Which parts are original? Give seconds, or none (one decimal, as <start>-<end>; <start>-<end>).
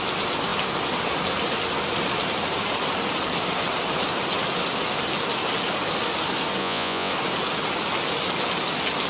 0.0-6.6; 7.1-9.1